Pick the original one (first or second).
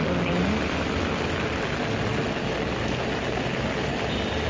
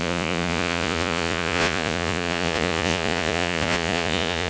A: first